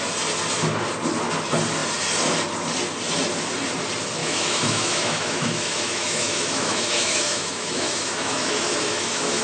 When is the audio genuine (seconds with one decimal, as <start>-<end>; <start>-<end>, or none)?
0.0-4.2